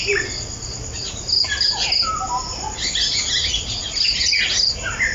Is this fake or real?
real